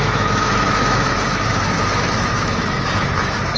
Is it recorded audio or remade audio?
remade